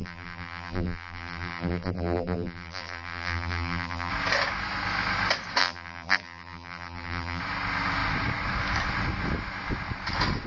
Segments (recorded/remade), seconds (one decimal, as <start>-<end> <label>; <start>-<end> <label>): 0.0-4.1 remade; 4.1-5.6 recorded; 5.6-7.4 remade; 7.4-10.5 recorded

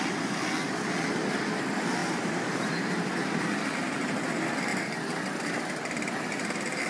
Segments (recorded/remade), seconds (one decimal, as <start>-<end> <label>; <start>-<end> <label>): 0.0-2.0 recorded; 2.0-3.4 remade; 3.4-4.7 recorded; 4.7-5.6 remade; 5.6-6.9 recorded